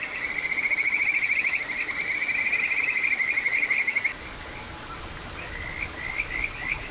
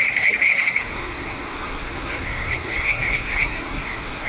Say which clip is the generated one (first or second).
second